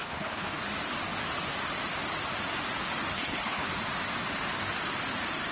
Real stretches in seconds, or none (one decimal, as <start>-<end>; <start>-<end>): 0.7-3.1; 3.7-5.5